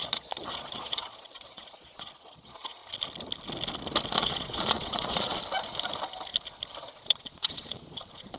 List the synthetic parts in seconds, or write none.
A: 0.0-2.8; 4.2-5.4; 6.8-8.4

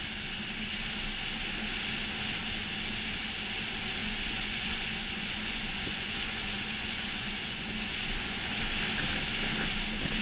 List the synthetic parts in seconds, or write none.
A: 4.0-8.6

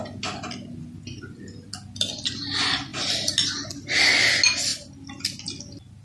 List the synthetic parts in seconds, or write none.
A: none

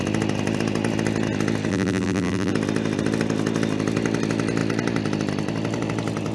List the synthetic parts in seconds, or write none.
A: 1.7-2.5

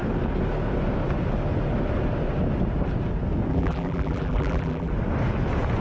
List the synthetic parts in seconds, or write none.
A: 3.5-4.9

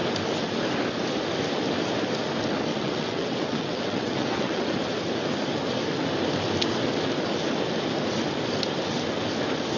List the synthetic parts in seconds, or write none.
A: 2.7-4.7

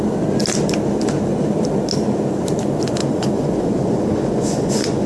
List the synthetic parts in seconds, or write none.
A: 3.0-5.1